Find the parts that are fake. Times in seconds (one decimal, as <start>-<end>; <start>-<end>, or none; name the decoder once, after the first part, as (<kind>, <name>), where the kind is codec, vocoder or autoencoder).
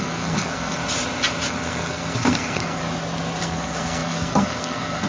0.0-0.8 (codec, SNAC); 1.5-2.8; 3.4-5.1